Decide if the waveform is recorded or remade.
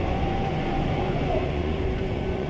remade